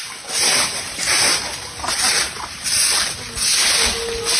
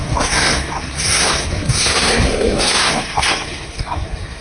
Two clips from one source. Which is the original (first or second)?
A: first